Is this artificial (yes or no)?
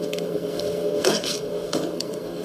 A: yes